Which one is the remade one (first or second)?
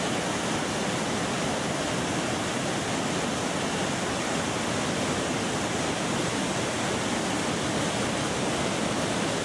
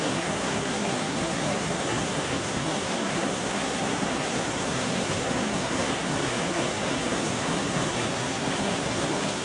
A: second